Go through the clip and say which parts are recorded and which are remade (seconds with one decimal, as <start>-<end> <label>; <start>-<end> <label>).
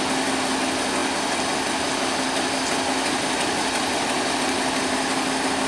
0.0-5.7 recorded